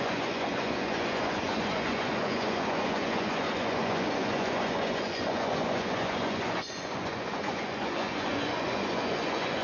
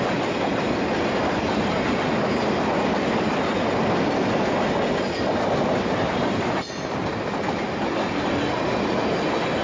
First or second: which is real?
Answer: second